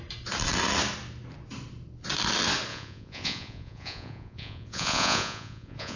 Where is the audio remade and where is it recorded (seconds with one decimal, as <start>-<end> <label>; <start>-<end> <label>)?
0.0-2.7 recorded; 2.7-6.0 remade

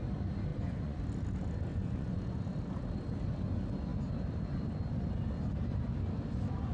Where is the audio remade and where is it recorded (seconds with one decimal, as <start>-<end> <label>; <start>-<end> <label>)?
0.0-0.5 recorded; 0.5-1.0 remade; 1.0-1.7 recorded; 1.7-2.4 remade; 2.4-6.7 recorded

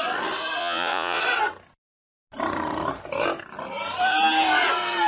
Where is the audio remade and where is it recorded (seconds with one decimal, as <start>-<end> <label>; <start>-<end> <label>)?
0.0-0.6 recorded; 0.6-1.2 remade; 1.2-5.1 recorded

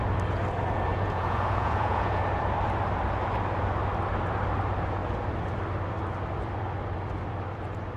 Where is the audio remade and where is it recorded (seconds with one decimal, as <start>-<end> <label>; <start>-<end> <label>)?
0.0-0.9 recorded; 0.9-2.2 remade; 2.2-8.0 recorded